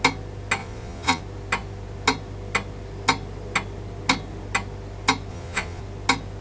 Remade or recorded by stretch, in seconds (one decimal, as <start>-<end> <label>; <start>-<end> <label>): 0.0-0.6 recorded; 0.6-1.2 remade; 1.2-5.3 recorded; 5.3-5.8 remade; 5.8-6.4 recorded